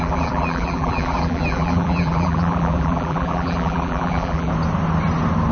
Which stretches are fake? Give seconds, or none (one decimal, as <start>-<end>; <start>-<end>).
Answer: 0.0-4.5